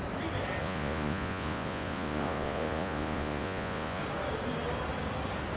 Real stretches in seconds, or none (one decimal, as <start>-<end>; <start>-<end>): 0.0-0.6; 4.0-5.6